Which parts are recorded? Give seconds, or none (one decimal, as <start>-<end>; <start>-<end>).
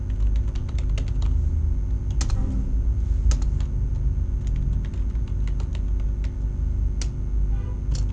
0.0-8.1